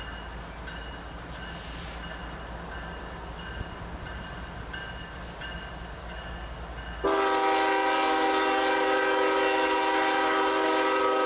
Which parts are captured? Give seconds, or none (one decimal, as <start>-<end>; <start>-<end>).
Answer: 0.0-11.3